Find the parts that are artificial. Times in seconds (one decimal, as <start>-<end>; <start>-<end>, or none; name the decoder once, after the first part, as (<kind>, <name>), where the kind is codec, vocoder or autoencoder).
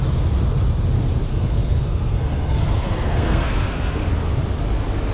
1.3-4.1 (codec, SNAC)